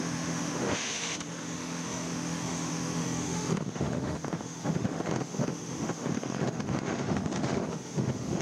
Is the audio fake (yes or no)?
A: yes